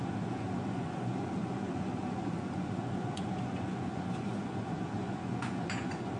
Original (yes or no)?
no